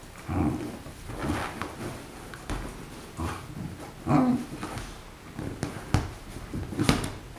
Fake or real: real